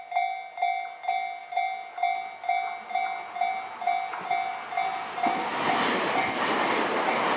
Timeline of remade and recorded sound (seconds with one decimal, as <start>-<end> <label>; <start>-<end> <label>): 0.0-7.4 recorded